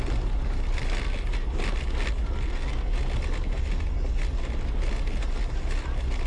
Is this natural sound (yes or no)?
yes